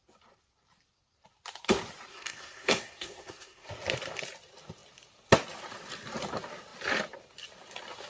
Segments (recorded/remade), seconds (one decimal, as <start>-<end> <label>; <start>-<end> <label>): 0.0-2.1 recorded; 2.1-3.7 remade; 3.7-8.1 recorded